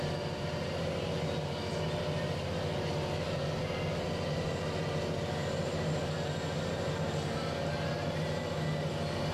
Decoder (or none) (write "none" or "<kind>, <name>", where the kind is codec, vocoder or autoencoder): none